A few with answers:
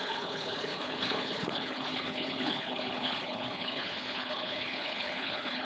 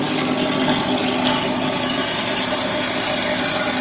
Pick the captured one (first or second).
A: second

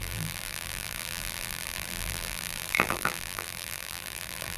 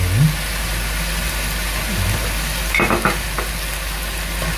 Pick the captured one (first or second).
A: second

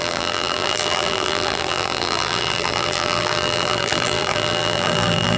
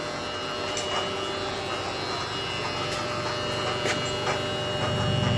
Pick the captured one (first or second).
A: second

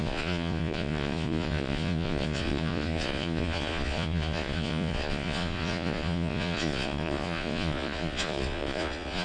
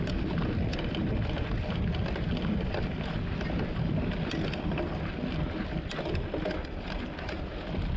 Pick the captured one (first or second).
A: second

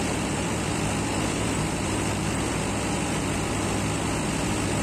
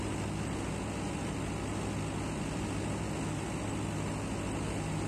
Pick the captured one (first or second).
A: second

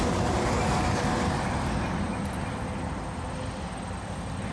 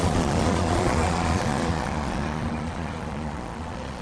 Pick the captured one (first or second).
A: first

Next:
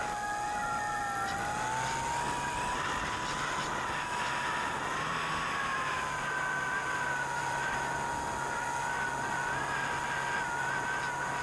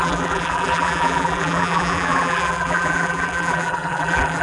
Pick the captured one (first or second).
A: first